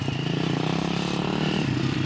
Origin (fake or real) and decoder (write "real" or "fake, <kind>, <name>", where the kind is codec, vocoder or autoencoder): real